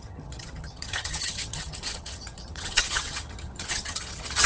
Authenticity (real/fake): fake